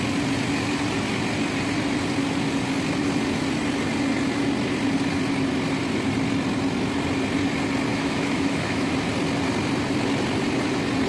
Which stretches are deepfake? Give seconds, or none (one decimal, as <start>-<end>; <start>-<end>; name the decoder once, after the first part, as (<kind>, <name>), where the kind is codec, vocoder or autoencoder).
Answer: 7.9-8.9 (autoencoder, DAC-VAE)